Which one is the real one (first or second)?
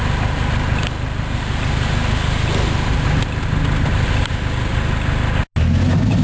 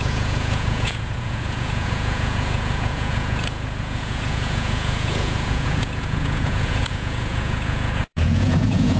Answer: first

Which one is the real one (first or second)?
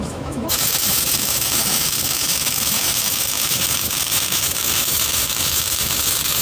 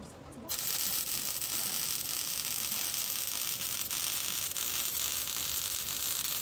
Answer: second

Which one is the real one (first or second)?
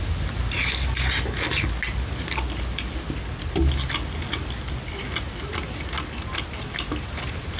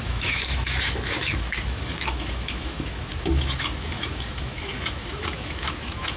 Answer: first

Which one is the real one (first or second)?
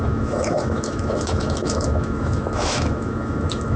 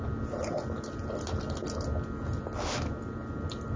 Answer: second